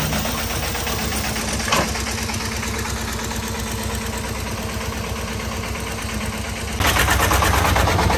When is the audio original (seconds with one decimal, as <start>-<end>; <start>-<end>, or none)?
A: 0.0-8.2

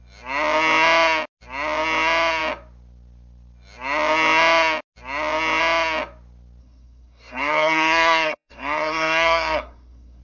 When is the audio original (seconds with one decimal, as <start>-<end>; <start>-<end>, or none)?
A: 0.0-6.6